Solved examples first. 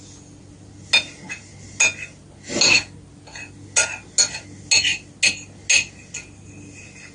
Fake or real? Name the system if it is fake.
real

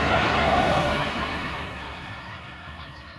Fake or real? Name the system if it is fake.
fake, codec, SNAC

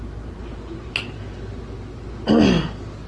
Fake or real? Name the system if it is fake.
real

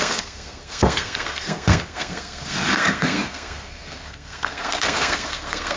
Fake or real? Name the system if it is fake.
fake, codec, SNAC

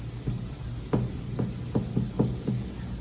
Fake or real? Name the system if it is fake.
real